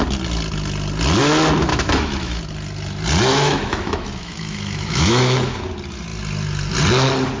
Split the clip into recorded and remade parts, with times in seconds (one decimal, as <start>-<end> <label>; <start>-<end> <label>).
0.0-1.7 recorded; 1.7-2.4 remade; 2.4-3.3 recorded; 3.3-5.6 remade; 5.6-7.4 recorded